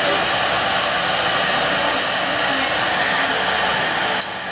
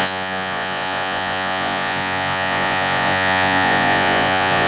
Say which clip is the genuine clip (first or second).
first